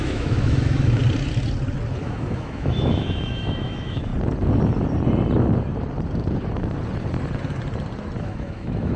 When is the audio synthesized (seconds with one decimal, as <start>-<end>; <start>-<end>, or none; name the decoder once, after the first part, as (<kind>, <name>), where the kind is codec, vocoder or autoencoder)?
0.0-1.0 (autoencoder, DAC-VAE); 2.0-4.1; 8.2-9.0